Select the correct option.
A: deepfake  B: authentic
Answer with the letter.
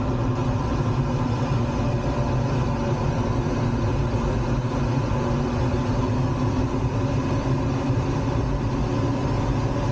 B